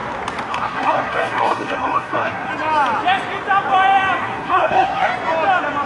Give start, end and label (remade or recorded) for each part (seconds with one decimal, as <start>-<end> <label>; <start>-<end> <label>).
0.0-0.5 recorded; 0.5-2.5 remade; 2.5-4.2 recorded; 4.2-5.1 remade; 5.1-5.9 recorded